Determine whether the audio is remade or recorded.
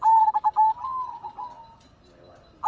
recorded